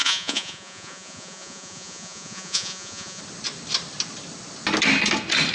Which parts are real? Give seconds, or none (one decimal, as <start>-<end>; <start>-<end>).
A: 3.2-5.5